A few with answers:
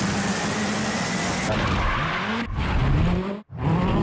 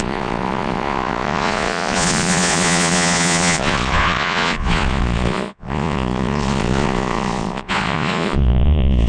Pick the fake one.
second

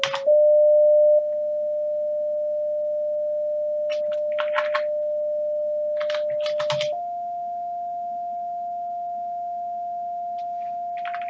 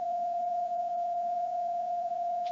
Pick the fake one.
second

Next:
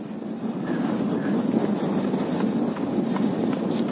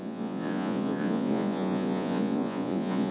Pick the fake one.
second